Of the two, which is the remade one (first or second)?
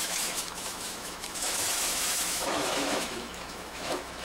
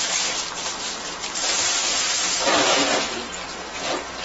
first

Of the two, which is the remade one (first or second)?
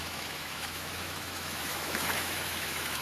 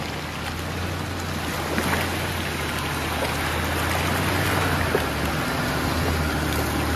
first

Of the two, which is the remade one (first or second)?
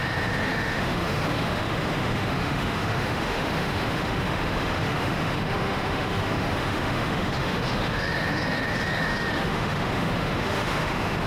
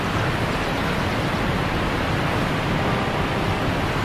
first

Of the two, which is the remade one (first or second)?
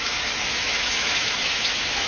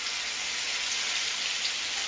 first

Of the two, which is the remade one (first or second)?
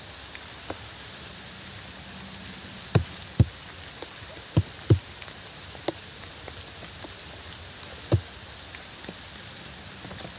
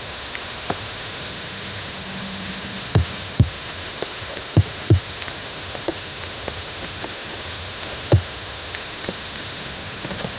second